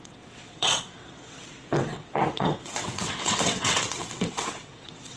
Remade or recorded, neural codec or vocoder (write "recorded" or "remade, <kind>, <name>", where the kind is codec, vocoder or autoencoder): remade, vocoder, WaveNeXt